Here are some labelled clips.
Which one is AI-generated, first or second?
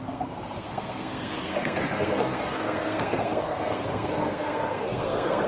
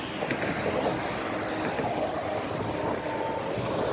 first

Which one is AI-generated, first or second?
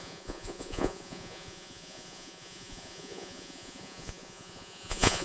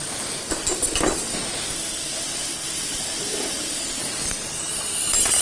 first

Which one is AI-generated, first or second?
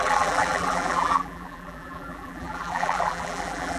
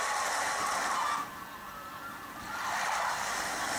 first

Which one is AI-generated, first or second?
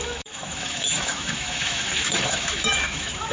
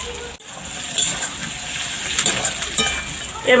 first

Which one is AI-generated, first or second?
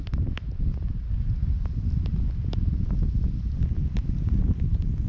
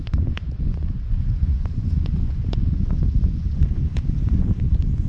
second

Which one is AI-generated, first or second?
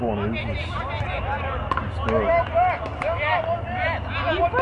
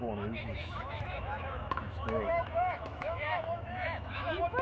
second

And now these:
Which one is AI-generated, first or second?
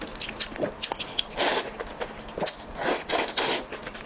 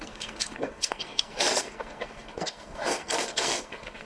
second